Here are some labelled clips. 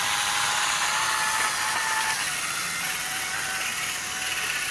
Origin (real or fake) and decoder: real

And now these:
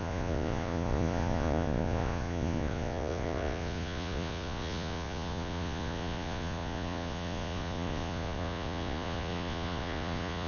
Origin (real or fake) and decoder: fake, vocoder, Vocos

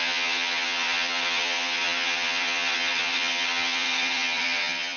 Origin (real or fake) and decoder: fake, vocoder, HiFi-GAN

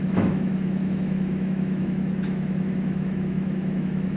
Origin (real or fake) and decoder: fake, autoencoder, DAC-VAE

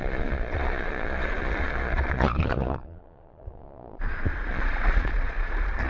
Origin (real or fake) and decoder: fake, vocoder, Vocos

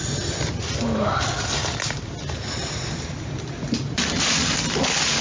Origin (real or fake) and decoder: real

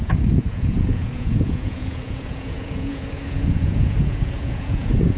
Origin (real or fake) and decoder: fake, vocoder, Vocos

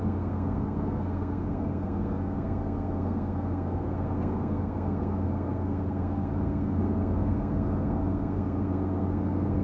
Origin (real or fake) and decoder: fake, codec, SNAC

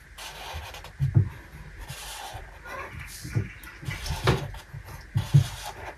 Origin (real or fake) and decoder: real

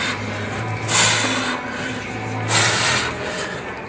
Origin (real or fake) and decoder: real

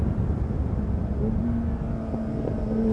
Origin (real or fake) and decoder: real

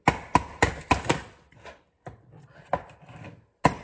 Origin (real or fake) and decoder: real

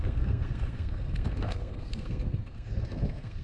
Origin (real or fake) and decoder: fake, codec, SNAC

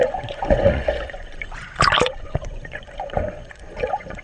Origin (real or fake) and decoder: fake, vocoder, Vocos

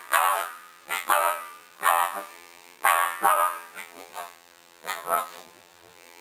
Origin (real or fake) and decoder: fake, vocoder, BigVGAN v2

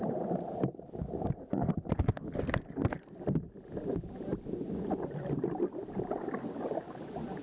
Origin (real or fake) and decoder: real